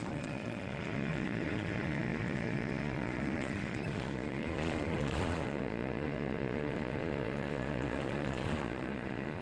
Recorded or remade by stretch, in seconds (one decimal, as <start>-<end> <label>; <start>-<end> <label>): 0.0-9.4 remade